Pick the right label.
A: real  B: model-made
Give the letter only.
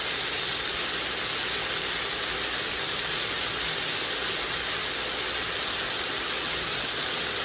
A